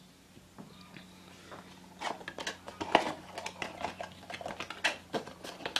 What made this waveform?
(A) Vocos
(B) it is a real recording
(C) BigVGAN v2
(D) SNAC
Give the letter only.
B